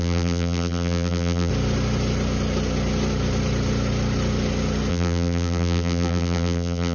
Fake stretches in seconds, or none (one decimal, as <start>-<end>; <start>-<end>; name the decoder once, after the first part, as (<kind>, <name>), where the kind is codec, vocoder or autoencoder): 0.0-1.5 (vocoder, BigVGAN v2); 4.9-6.9